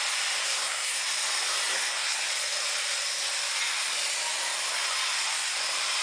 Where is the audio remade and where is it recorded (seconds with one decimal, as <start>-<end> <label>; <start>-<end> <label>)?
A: 0.0-0.4 recorded; 0.4-1.0 remade; 1.0-1.7 recorded; 1.7-2.3 remade; 2.3-6.0 recorded